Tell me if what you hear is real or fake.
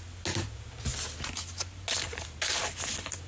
real